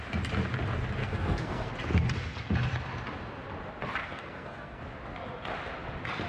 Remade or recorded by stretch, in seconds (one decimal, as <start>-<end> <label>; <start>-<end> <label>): 0.0-1.0 recorded; 1.0-1.7 remade; 1.7-4.0 recorded; 4.0-4.8 remade; 4.8-6.3 recorded